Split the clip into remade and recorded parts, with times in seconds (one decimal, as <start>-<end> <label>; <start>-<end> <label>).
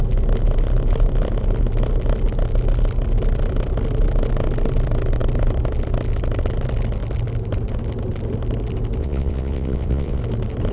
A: 0.0-9.0 recorded; 9.0-10.2 remade; 10.2-10.7 recorded